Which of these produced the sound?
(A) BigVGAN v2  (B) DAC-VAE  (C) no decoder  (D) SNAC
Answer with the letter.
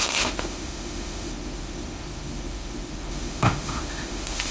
B